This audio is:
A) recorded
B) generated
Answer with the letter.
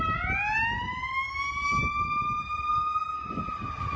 A